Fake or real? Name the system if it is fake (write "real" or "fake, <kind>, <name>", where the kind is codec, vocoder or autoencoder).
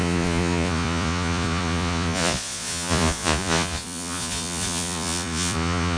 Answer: fake, vocoder, Vocos